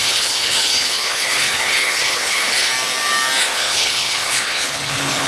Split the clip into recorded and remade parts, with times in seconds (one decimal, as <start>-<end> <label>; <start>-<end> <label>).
0.0-2.7 remade; 2.7-3.4 recorded; 3.4-5.3 remade